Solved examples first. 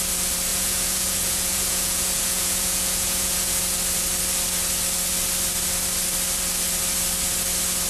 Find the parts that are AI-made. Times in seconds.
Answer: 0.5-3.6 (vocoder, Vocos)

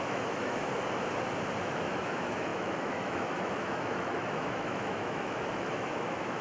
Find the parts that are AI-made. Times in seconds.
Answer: 0.0-0.7 (autoencoder, DAC-VAE); 1.6-6.4

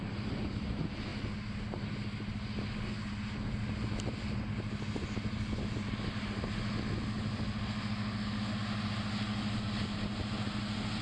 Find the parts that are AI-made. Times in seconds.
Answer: none

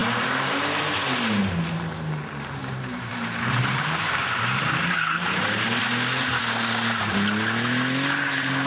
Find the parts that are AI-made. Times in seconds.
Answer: 0.0-0.8 (vocoder, BigVGAN v2); 2.6-5.8

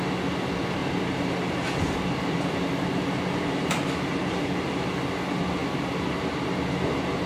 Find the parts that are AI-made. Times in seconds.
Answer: 0.8-4.9 (vocoder, BigVGAN v2)

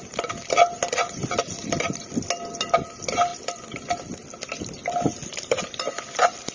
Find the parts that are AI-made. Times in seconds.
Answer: none

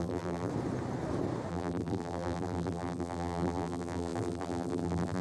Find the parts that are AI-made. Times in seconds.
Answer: 0.0-0.5 (vocoder, BigVGAN v2); 1.5-5.2

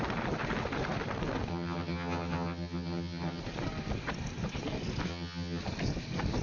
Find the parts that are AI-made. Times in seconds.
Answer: 1.5-3.4 (vocoder, HiFi-GAN); 5.1-5.6